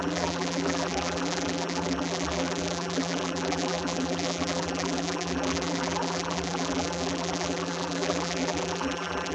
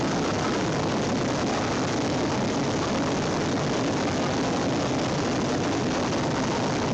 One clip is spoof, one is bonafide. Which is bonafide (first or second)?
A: second